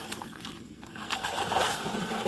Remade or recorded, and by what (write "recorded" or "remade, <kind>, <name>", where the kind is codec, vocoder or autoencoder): remade, codec, SNAC